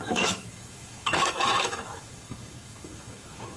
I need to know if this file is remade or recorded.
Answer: remade